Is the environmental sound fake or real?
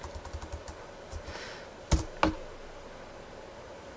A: real